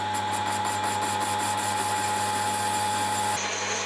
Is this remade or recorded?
recorded